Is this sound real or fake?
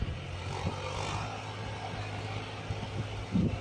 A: real